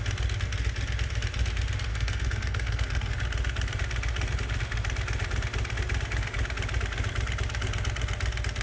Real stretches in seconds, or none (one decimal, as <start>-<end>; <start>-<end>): 0.0-1.9; 3.1-8.6